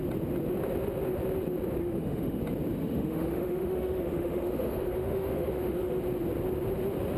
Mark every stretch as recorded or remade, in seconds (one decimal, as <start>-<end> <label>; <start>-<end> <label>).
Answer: 0.0-1.8 recorded; 1.8-2.4 remade; 2.4-2.8 recorded; 2.8-6.0 remade; 6.0-7.2 recorded